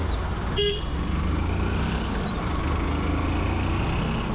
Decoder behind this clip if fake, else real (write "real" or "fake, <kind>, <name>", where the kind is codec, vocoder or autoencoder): real